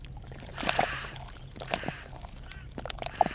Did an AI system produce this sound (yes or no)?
no